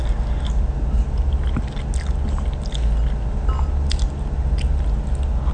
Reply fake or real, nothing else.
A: real